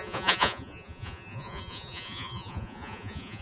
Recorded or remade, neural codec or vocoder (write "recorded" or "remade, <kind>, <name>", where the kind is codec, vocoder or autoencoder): remade, vocoder, Vocos